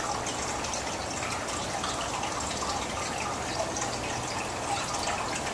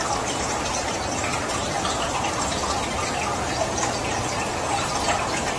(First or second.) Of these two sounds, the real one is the first